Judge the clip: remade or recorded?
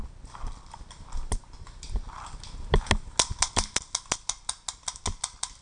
recorded